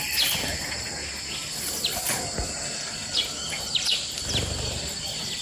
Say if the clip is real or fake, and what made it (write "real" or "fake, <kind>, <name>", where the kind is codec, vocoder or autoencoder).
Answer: real